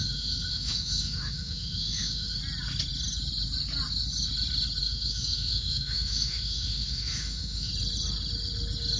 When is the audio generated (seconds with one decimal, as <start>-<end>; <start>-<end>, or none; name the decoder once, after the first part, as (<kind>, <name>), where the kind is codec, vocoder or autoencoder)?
0.0-2.4 (autoencoder, DAC-VAE); 4.8-7.7